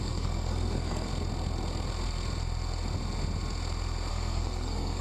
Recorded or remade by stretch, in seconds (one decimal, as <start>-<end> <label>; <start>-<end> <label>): 0.0-1.1 remade; 1.1-4.1 recorded; 4.1-5.0 remade